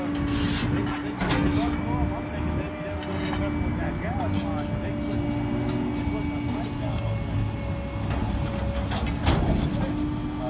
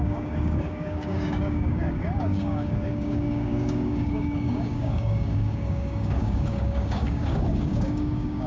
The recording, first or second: first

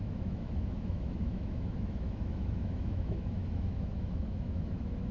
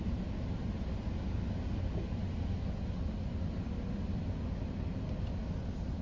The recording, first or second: second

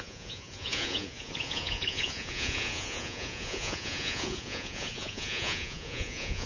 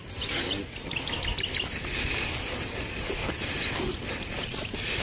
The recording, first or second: second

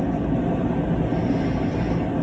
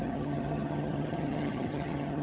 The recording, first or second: first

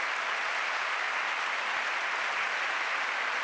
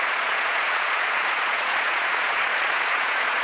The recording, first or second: first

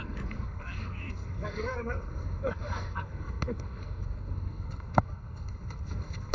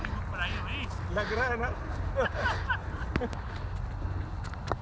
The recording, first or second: second